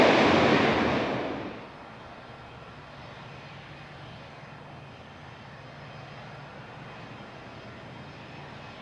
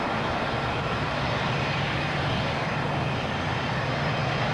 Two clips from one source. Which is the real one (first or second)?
first